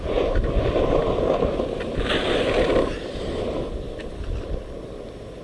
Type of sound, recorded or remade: recorded